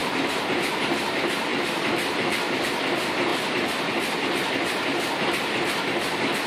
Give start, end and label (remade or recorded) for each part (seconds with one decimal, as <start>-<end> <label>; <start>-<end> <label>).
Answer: 0.0-1.5 recorded; 1.5-2.6 remade; 2.6-3.3 recorded; 3.3-4.5 remade; 4.5-6.5 recorded